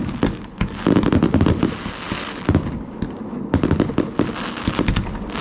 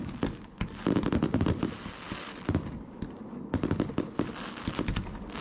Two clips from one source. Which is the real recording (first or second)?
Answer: first